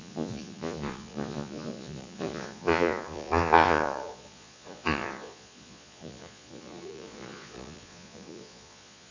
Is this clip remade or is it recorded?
remade